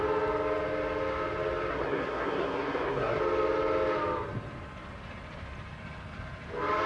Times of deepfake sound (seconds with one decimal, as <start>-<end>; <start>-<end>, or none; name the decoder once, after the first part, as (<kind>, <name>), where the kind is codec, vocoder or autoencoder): 1.7-3.2 (codec, SNAC)